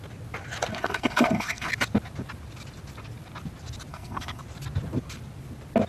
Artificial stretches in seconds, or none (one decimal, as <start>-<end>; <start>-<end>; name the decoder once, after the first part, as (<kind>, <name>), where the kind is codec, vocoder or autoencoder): 0.7-1.7 (codec, SNAC); 3.9-4.4